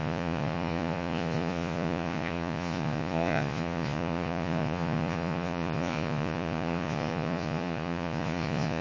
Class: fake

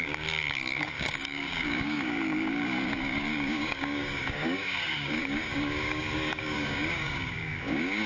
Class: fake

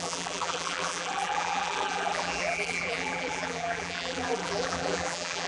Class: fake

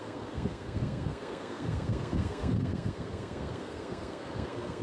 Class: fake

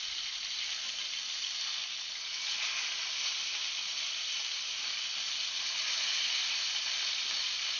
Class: real